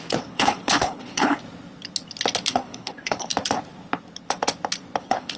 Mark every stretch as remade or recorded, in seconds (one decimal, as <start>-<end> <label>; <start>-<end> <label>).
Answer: 0.0-1.4 remade; 1.4-2.5 recorded; 2.5-3.3 remade; 3.3-5.0 recorded; 5.0-5.4 remade